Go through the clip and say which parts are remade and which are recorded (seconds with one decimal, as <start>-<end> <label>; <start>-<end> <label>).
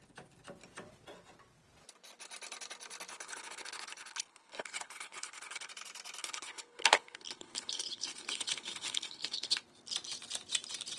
0.0-3.1 recorded; 3.1-5.7 remade; 5.7-6.2 recorded; 6.2-9.6 remade; 9.6-11.0 recorded